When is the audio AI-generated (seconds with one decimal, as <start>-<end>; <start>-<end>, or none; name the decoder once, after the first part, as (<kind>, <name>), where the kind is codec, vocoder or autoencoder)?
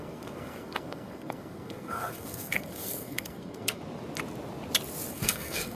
0.0-3.8 (codec, SNAC); 5.1-5.7